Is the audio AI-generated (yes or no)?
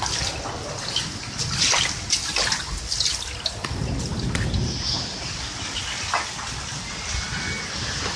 no